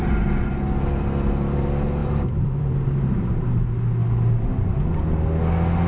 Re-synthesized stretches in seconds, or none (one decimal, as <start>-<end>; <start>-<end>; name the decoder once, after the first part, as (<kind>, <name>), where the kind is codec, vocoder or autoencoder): 2.0-3.5 (vocoder, BigVGAN v2)